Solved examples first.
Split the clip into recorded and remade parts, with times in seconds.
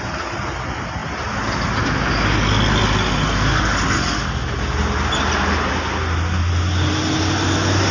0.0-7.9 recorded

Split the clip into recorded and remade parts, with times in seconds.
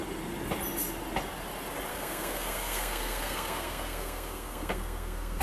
0.0-1.9 recorded; 1.9-5.4 remade